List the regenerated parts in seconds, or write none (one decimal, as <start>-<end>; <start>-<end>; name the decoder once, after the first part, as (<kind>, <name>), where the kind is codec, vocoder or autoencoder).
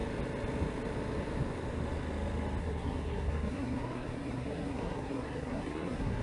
2.6-6.2 (codec, SNAC)